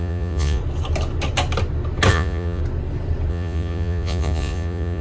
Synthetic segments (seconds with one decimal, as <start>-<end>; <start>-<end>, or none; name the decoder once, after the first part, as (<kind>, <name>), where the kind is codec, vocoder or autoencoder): 0.0-0.6 (vocoder, Vocos); 2.1-2.6; 3.3-5.0

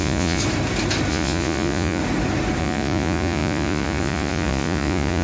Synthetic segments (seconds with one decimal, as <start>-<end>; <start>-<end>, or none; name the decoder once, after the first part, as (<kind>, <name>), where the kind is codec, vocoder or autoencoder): 0.0-0.4 (vocoder, Vocos); 1.1-2.0; 2.6-5.2